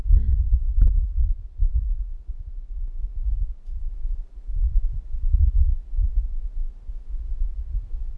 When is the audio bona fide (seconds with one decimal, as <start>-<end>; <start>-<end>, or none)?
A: 0.0-1.7; 2.2-3.1; 5.0-8.2